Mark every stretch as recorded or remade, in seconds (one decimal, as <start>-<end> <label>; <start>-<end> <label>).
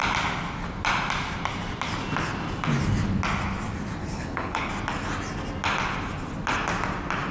0.0-4.0 recorded; 4.0-4.7 remade; 4.7-7.3 recorded